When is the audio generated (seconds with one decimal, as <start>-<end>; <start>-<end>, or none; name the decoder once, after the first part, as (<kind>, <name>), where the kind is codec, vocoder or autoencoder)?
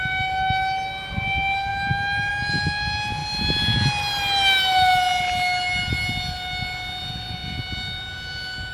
none